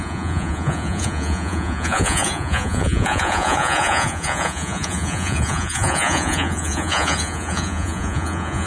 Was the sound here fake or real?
fake